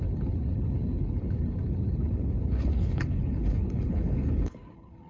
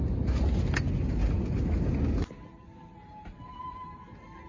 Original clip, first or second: second